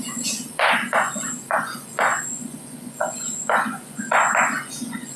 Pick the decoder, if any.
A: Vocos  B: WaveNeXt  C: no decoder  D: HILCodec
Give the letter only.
A